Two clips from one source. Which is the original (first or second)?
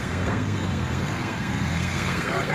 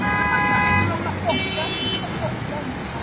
second